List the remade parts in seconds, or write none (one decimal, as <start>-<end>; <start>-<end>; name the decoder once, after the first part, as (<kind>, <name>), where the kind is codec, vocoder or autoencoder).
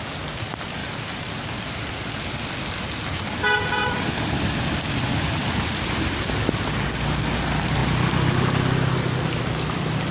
0.8-2.2 (vocoder, BigVGAN v2); 3.8-5.8